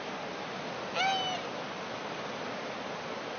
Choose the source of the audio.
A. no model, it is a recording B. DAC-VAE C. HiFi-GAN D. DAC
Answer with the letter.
A